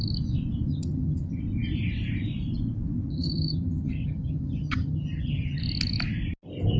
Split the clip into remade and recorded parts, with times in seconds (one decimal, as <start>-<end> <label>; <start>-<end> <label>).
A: 0.0-0.7 recorded; 0.7-1.4 remade; 1.4-3.1 recorded; 3.1-5.6 remade; 5.6-6.8 recorded